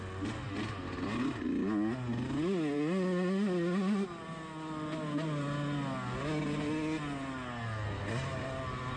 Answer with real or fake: real